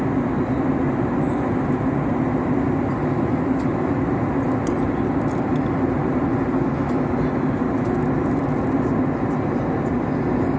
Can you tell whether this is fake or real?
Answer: real